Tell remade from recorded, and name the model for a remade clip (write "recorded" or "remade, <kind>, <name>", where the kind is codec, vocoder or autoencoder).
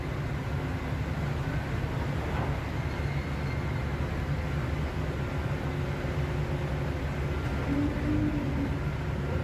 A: recorded